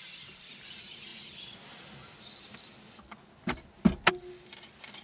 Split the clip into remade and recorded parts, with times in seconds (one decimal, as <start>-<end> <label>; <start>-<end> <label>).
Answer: 0.0-5.0 recorded